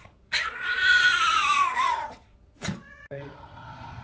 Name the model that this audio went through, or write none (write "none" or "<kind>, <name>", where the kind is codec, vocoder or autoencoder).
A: vocoder, Vocos